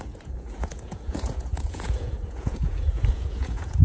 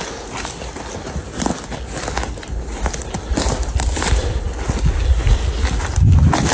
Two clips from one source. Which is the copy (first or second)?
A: first